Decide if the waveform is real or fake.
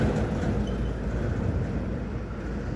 real